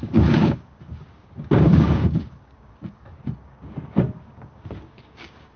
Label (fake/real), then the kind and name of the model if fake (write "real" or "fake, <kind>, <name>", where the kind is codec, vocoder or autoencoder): fake, codec, DAC